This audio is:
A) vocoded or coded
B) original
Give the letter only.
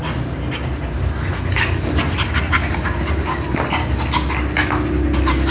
B